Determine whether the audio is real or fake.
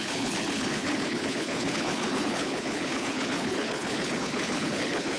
fake